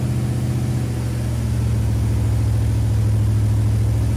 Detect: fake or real real